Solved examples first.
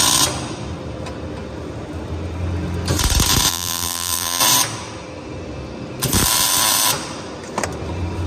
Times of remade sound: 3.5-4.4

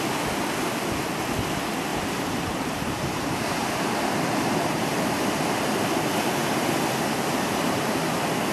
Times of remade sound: 1.9-5.8

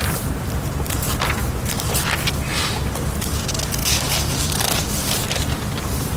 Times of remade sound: 0.0-3.8; 4.3-6.2

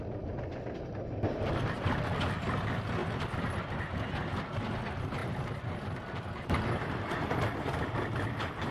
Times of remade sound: none

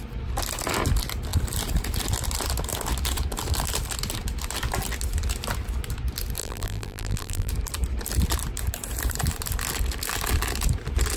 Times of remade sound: 6.4-7.5